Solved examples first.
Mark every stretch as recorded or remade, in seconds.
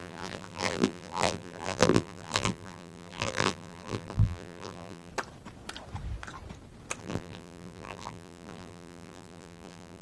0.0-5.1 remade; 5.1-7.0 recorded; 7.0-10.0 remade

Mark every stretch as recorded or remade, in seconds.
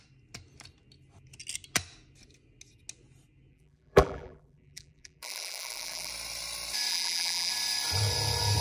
0.0-3.5 recorded; 3.5-6.1 remade; 6.1-6.9 recorded; 6.9-7.5 remade; 7.5-8.6 recorded